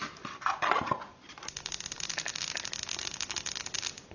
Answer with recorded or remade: recorded